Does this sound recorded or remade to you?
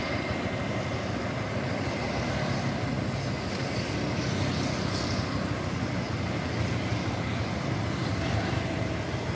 recorded